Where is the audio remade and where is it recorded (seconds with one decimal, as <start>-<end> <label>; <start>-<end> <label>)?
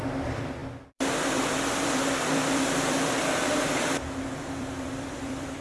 0.0-5.6 remade